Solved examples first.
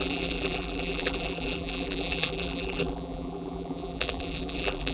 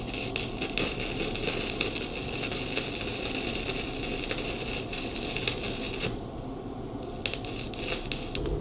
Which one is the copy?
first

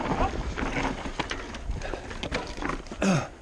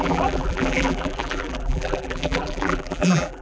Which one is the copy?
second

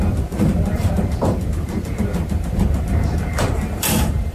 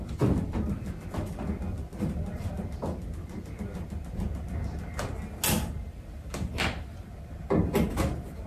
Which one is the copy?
first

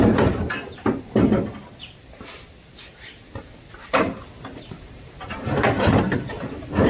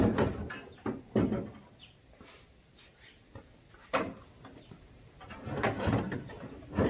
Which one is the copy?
first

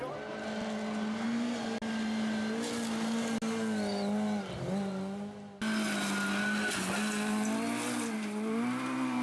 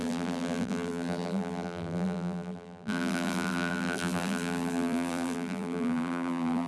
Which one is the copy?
second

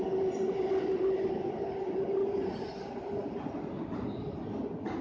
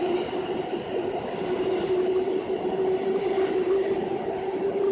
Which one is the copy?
second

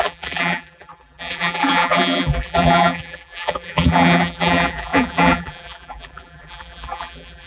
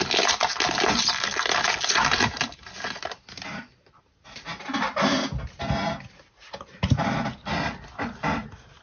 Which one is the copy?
first